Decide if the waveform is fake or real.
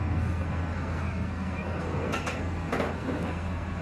fake